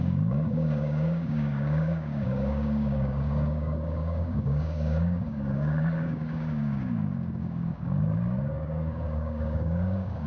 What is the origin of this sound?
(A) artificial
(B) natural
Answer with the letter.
A